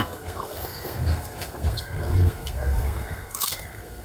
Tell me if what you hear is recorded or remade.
remade